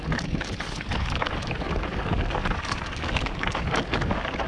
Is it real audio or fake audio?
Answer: fake